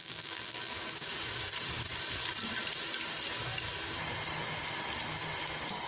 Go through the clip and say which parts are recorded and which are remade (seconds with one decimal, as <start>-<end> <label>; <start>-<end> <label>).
0.0-0.7 remade; 0.7-5.9 recorded